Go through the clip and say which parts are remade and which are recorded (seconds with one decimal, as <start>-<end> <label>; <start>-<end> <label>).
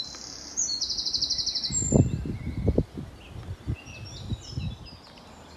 0.0-5.6 recorded